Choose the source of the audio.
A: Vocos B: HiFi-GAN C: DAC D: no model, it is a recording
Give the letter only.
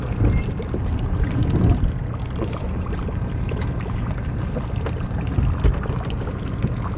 D